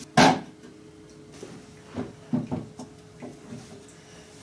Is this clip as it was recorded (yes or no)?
yes